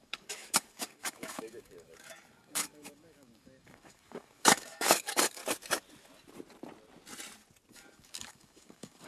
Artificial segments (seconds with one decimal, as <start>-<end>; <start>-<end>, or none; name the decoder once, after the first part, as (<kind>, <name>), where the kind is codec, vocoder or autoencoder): 0.0-5.4 (codec, DAC); 7.7-9.1